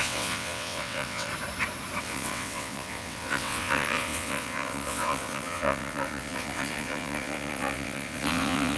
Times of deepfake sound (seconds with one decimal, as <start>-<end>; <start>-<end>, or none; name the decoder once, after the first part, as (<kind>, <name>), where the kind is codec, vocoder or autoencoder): 0.0-1.3 (vocoder, WaveNeXt); 2.0-8.8